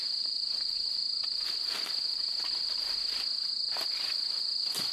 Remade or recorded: recorded